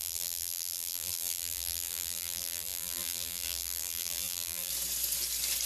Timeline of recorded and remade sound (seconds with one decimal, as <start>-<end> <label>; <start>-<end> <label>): 0.0-4.7 remade; 4.7-5.7 recorded